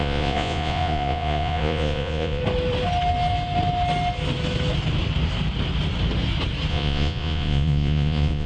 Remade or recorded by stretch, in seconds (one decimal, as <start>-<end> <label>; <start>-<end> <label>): 0.0-2.4 remade; 2.4-6.7 recorded; 6.7-8.5 remade